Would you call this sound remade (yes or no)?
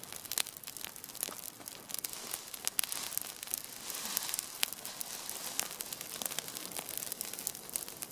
no